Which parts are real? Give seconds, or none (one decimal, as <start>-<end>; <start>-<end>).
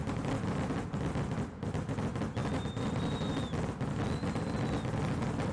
0.0-5.5